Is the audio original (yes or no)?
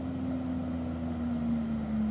yes